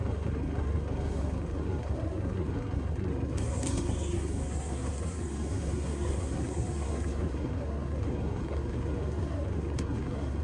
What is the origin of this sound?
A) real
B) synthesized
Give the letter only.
B